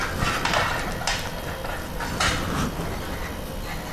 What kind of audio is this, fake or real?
real